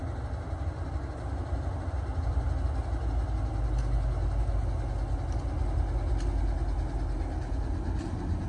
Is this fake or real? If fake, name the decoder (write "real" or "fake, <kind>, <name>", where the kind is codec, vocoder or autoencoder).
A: real